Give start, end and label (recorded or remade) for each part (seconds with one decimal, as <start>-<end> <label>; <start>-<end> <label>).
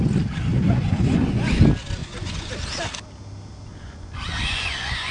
0.0-0.5 recorded; 0.5-1.5 remade; 1.5-2.0 recorded; 2.0-2.5 remade; 2.5-3.7 recorded; 3.7-5.1 remade